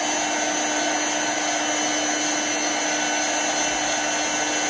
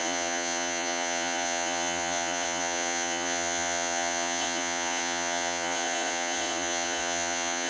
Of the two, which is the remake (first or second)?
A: second